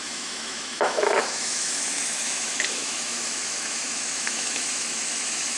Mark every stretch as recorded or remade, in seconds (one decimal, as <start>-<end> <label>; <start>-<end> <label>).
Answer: 0.0-5.6 remade